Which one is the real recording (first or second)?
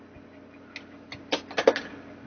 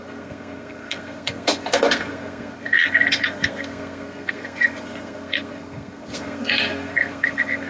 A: first